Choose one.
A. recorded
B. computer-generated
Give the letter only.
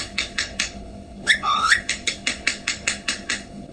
B